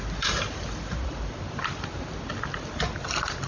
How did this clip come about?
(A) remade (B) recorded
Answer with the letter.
B